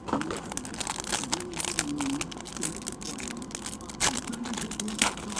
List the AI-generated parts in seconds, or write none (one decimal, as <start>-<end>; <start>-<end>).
4.2-5.0